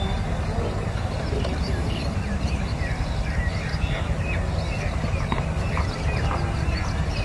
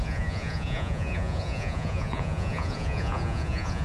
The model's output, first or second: second